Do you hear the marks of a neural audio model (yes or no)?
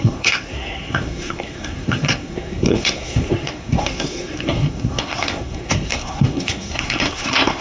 yes